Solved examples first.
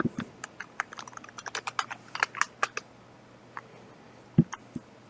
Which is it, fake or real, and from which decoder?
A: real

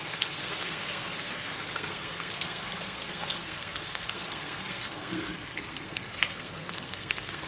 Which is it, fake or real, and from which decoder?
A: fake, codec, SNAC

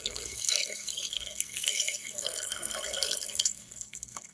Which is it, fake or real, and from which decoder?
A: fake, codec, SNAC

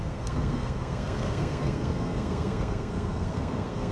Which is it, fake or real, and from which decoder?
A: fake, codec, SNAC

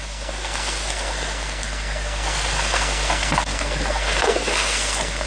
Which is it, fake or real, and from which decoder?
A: fake, codec, SNAC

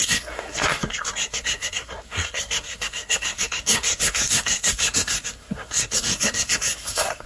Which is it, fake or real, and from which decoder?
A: fake, codec, SNAC